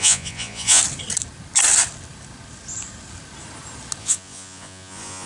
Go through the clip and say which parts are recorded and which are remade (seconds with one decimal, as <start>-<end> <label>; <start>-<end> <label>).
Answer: 0.0-0.8 remade; 0.8-4.0 recorded; 4.0-5.3 remade